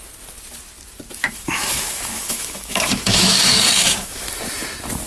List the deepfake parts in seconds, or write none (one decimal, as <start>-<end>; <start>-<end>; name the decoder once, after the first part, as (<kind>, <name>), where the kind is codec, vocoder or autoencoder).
1.2-4.3 (autoencoder, DAC-VAE)